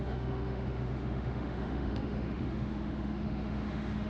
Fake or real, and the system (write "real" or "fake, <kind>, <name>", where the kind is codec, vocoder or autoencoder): fake, autoencoder, DAC-VAE